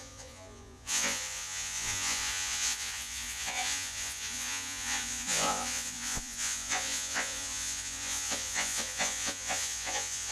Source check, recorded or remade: remade